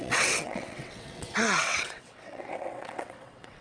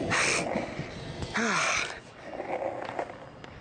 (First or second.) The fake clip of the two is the first